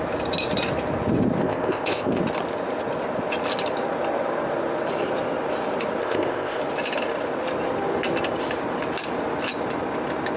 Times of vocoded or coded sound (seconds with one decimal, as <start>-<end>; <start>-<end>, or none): 1.4-2.2; 6.0-6.6